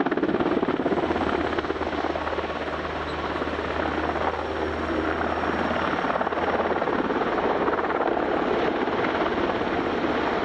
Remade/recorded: recorded